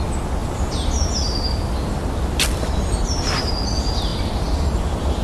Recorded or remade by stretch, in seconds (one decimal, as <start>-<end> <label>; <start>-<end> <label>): 0.0-0.4 recorded; 0.4-3.5 remade; 3.5-4.1 recorded; 4.1-4.8 remade; 4.8-5.2 recorded